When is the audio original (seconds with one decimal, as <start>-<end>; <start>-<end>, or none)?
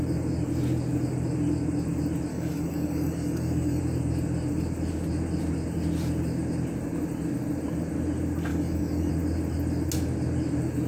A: 0.0-2.3; 3.8-8.5; 9.1-10.9